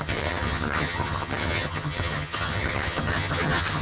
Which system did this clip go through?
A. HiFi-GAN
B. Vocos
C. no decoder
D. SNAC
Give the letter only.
A